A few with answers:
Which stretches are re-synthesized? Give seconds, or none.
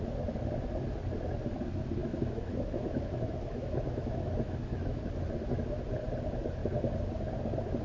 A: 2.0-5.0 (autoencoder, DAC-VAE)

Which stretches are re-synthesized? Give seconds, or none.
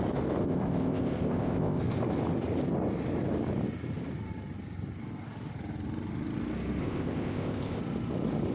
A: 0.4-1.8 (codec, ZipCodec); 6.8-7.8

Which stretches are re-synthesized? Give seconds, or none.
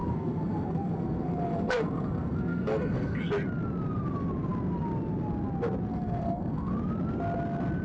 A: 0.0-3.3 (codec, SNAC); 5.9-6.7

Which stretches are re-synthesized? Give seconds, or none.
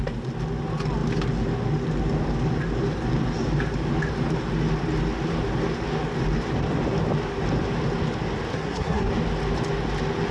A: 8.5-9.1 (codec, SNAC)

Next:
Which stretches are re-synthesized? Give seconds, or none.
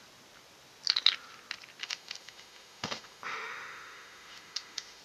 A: 1.8-5.0 (autoencoder, DAC-VAE)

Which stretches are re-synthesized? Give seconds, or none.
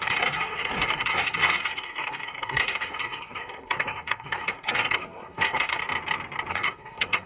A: 0.0-5.8 (codec, SNAC); 6.5-7.3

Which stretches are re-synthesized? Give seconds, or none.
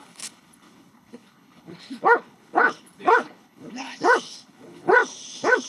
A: 0.0-5.7 (codec, HILCodec)